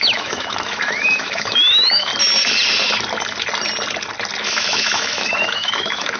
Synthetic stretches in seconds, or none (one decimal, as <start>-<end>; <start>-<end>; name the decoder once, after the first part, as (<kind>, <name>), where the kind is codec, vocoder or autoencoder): 0.0-2.1 (autoencoder, DAC-VAE); 4.4-6.2